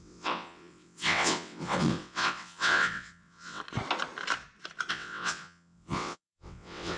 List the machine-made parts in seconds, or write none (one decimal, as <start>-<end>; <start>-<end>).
0.0-3.6; 4.9-7.0